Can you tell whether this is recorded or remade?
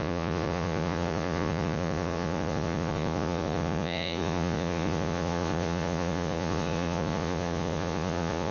remade